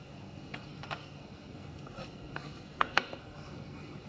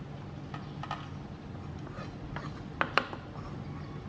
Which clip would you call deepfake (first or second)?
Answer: first